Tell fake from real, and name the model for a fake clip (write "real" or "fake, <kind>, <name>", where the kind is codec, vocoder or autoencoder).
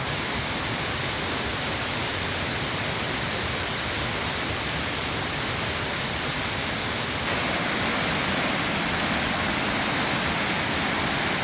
real